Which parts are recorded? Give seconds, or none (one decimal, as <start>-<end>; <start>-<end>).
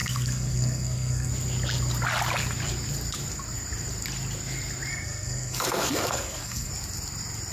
1.3-4.9; 6.7-7.5